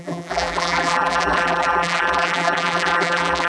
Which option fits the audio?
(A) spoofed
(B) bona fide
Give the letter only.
A